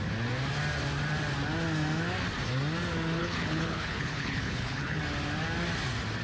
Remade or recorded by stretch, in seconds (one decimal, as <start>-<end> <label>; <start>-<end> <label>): 0.0-3.2 recorded; 3.2-5.0 remade; 5.0-6.2 recorded

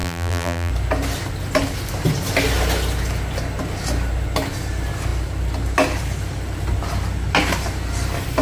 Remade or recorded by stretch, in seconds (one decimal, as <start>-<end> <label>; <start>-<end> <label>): 0.0-0.7 remade; 0.7-8.4 recorded

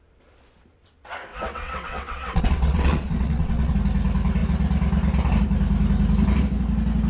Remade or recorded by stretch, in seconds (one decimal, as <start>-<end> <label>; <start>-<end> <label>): 0.0-1.3 recorded; 1.3-3.7 remade; 3.7-7.1 recorded